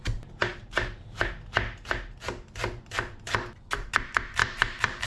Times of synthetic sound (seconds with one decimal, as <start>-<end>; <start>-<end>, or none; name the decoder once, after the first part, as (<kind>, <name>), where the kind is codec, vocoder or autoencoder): 0.5-1.3 (vocoder, BigVGAN v2); 4.4-5.1